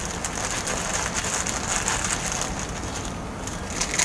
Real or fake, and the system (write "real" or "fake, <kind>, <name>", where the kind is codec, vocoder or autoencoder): real